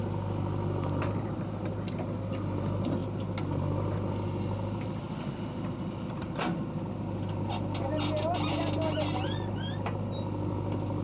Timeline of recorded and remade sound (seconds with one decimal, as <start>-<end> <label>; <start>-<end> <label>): 0.0-11.0 recorded